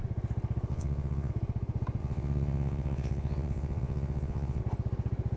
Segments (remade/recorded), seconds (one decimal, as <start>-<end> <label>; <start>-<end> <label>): 0.0-0.7 recorded; 0.7-1.3 remade; 1.3-2.0 recorded; 2.0-4.6 remade; 4.6-5.4 recorded